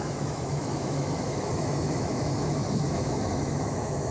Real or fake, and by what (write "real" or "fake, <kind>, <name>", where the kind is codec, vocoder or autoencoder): fake, autoencoder, DAC-VAE